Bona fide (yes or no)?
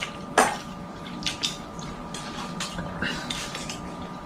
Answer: yes